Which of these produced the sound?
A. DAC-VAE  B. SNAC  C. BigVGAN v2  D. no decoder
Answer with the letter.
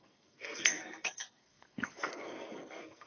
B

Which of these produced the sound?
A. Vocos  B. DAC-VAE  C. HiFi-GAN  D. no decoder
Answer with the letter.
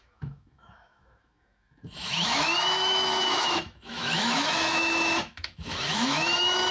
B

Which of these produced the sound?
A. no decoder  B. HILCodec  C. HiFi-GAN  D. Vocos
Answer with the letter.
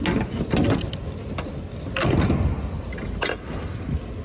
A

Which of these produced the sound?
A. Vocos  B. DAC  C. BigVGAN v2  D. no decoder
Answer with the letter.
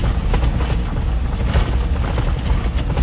D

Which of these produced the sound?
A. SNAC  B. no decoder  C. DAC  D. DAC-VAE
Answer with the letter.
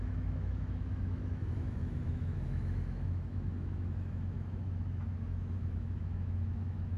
D